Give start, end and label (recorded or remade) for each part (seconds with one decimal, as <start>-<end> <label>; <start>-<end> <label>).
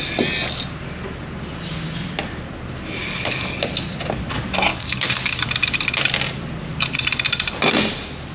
0.0-3.0 recorded; 3.0-3.6 remade; 3.6-4.7 recorded; 4.7-5.4 remade; 5.4-8.3 recorded